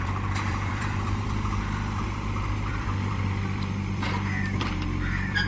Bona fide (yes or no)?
no